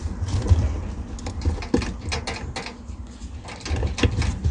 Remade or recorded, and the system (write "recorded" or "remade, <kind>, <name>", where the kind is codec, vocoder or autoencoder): recorded